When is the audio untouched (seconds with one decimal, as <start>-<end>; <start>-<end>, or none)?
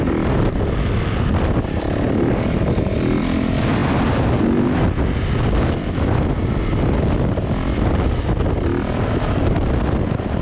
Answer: 0.0-10.4